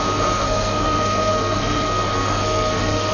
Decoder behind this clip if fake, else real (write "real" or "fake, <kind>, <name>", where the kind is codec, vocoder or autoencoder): fake, codec, SNAC